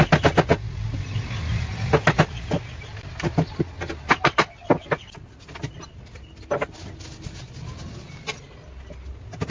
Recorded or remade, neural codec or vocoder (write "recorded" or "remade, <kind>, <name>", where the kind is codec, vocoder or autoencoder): recorded